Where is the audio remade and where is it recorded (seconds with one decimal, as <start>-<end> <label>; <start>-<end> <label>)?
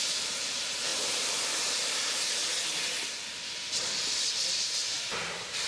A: 0.0-2.4 remade; 2.4-4.3 recorded; 4.3-5.7 remade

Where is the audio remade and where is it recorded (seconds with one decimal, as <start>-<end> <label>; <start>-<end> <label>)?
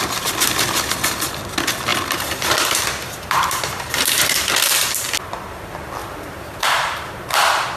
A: 0.0-1.9 recorded; 1.9-4.5 remade; 4.5-6.0 recorded; 6.0-7.8 remade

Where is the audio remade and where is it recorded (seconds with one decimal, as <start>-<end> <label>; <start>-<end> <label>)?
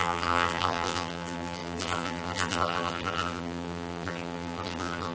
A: 0.0-5.1 remade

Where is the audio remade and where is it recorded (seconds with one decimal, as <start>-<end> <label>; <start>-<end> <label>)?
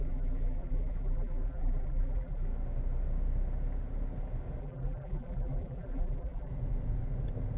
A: 0.0-2.5 remade; 2.5-4.6 recorded; 4.6-6.5 remade; 6.5-7.6 recorded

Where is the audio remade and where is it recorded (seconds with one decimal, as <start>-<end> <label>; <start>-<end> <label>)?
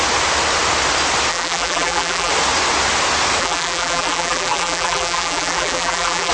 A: 0.0-1.3 recorded; 1.3-2.3 remade; 2.3-3.4 recorded; 3.4-6.3 remade